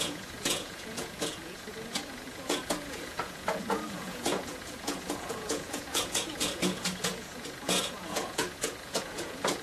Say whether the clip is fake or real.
fake